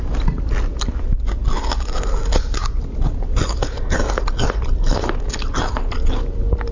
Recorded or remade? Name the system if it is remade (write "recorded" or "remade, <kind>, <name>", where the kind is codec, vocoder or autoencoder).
recorded